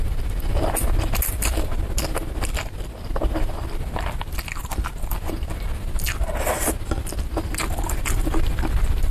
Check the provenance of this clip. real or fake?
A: real